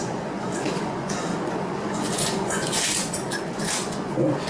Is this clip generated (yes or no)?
yes